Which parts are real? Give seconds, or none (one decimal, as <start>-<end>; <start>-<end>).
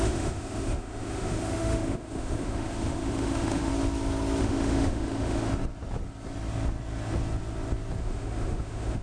3.7-4.4; 5.5-8.0